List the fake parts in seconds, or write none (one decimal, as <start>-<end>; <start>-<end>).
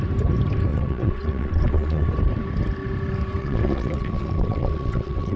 0.7-2.1; 3.4-5.4